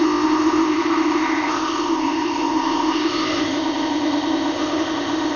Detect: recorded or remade remade